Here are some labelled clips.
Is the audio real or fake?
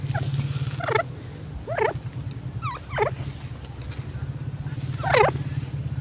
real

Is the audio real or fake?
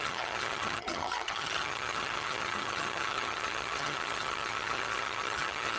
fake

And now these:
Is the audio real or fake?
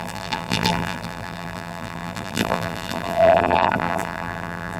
fake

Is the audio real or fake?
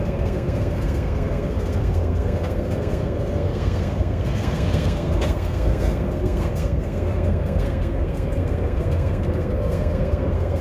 fake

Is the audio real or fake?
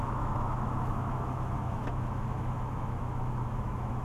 fake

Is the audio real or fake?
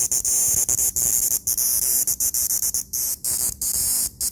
real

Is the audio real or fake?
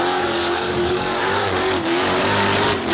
fake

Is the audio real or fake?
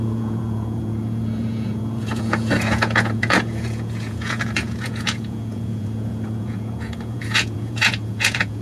fake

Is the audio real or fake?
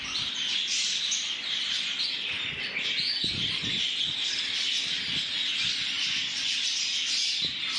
real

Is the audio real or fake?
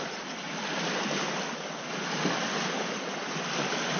real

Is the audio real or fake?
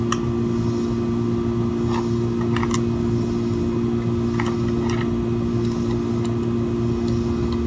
real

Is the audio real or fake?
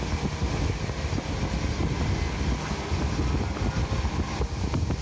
real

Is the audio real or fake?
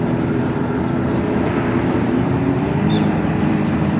fake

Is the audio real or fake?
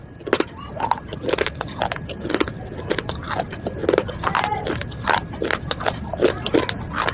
real